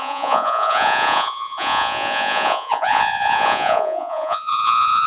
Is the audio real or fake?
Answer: fake